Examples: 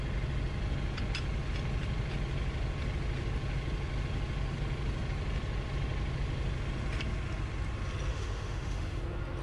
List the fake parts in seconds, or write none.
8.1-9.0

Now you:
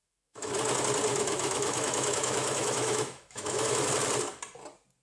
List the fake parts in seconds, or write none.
0.0-0.5; 1.1-3.9

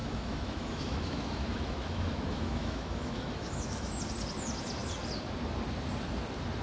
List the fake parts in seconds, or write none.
0.0-4.0

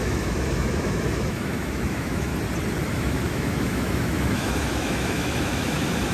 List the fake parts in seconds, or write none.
0.0-2.3; 2.9-6.1